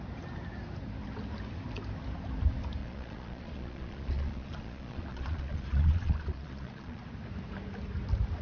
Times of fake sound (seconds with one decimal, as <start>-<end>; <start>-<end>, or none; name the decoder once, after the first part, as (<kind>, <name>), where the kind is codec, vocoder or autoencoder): 2.8-7.0 (vocoder, Vocos)